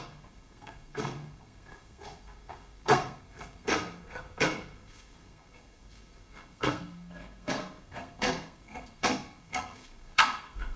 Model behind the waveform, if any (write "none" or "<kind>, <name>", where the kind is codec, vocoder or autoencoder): codec, SNAC